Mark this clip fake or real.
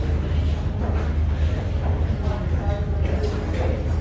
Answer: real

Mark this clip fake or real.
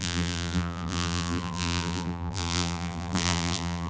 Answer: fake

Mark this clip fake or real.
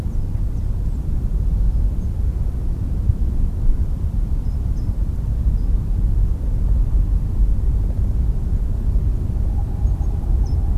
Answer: fake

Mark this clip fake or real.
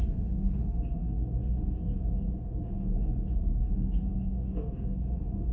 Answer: fake